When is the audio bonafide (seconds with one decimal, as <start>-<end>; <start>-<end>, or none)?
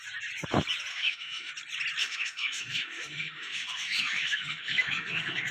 0.0-0.9; 1.5-2.0